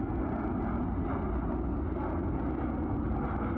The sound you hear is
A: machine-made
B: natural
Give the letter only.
B